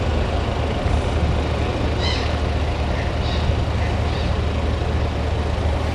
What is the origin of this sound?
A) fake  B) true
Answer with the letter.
B